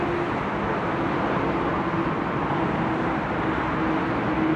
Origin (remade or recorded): recorded